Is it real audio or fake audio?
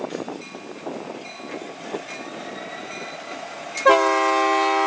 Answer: real